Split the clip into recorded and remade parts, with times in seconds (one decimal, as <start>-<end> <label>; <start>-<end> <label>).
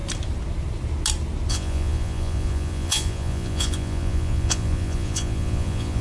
0.0-1.5 recorded; 1.5-6.0 remade